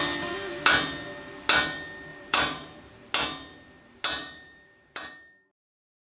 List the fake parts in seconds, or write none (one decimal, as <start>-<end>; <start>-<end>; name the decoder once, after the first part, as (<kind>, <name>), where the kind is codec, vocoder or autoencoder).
2.1-3.0 (vocoder, BigVGAN v2); 4.2-5.1

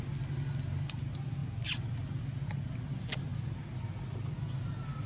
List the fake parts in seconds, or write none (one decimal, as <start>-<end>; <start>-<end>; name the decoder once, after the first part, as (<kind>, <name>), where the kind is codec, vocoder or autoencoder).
none